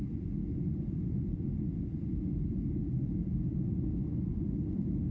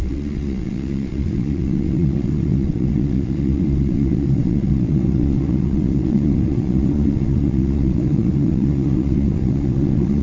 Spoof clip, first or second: second